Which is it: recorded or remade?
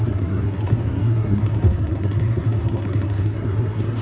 remade